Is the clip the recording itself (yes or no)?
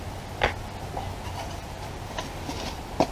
yes